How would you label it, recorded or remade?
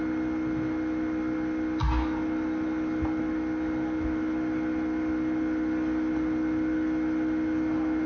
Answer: recorded